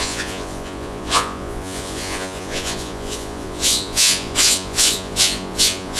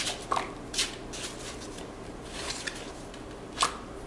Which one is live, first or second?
second